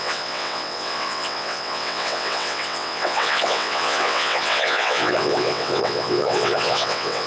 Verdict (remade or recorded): remade